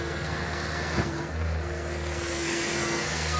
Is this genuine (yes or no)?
no